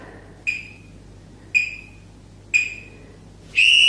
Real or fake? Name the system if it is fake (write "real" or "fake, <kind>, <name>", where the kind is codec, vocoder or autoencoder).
real